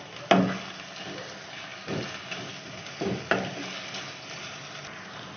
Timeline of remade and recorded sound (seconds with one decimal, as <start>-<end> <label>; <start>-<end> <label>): 0.0-5.4 recorded